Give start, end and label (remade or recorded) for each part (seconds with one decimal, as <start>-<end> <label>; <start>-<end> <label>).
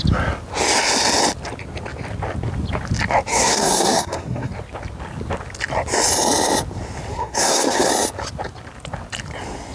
0.0-3.3 recorded; 3.3-4.5 remade; 4.5-7.1 recorded; 7.1-7.9 remade; 7.9-9.7 recorded